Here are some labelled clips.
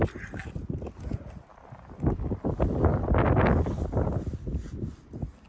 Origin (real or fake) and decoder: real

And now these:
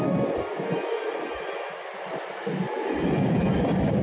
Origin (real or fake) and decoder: real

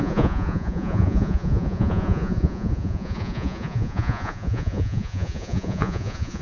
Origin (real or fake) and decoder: fake, vocoder, Vocos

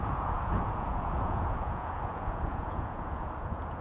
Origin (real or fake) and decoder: fake, vocoder, Vocos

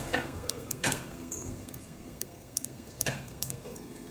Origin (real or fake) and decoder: fake, codec, SNAC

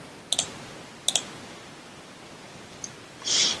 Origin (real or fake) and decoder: real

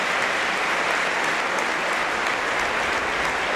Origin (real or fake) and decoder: real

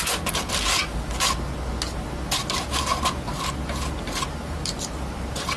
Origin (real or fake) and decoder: real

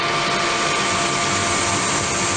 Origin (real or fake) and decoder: real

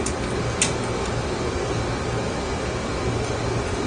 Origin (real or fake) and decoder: real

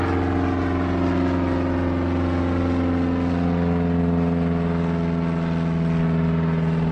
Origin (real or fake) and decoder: real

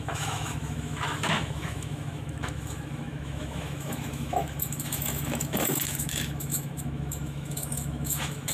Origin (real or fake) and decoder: fake, autoencoder, DAC-VAE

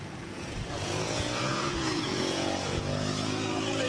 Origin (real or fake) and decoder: fake, vocoder, Vocos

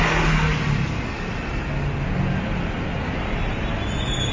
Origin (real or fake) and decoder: real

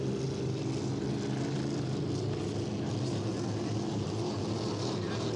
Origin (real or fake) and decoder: real